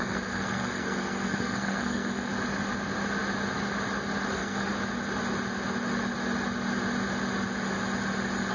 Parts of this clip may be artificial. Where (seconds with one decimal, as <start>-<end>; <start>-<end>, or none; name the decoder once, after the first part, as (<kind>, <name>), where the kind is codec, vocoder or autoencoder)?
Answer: 0.0-2.3 (codec, SNAC); 4.3-4.7